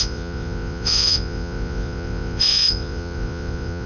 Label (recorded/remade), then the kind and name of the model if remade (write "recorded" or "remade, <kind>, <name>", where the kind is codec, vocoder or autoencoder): remade, vocoder, Vocos